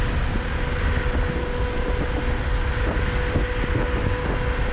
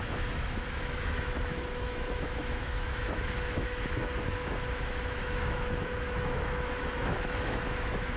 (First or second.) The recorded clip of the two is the first